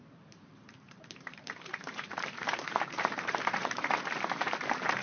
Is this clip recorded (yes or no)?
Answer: no